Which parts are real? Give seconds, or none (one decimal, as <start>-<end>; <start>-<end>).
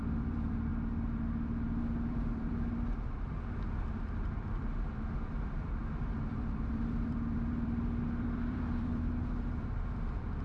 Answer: 0.7-1.8; 5.8-6.3